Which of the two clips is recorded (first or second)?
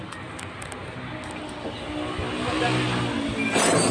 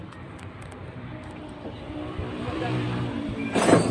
first